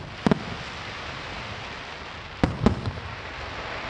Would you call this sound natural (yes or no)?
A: yes